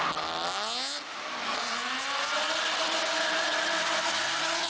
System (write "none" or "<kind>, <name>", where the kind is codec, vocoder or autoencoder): none